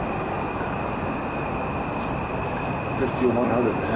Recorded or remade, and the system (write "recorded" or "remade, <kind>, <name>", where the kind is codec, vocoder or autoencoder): remade, vocoder, BigVGAN v2